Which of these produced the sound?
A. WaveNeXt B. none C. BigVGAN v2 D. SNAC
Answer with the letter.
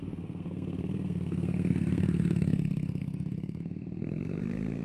D